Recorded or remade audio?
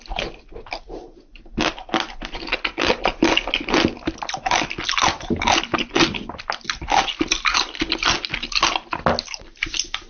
recorded